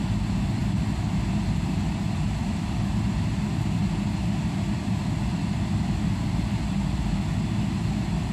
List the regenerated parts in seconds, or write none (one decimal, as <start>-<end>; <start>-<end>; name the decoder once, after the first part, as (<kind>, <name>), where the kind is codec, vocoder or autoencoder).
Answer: none